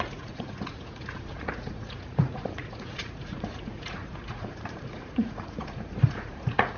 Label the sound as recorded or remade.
remade